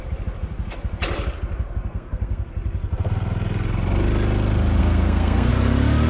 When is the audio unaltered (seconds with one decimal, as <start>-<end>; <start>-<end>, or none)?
0.0-1.9; 2.5-4.8; 5.5-6.1